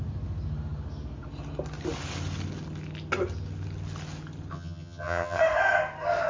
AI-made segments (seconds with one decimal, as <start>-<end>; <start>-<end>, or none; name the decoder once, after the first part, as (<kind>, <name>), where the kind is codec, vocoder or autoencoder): 4.5-5.4 (vocoder, HiFi-GAN)